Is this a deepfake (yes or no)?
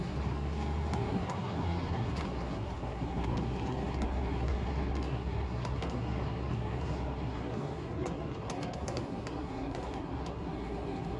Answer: yes